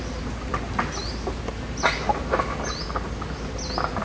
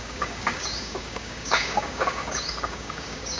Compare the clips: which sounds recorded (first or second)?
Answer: first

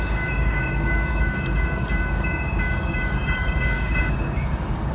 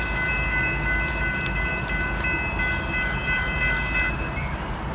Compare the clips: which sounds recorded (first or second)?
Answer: second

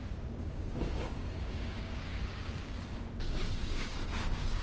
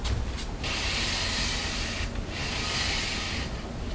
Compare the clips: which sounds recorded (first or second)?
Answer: second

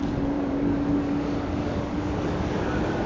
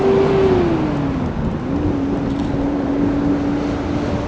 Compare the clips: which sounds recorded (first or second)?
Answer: second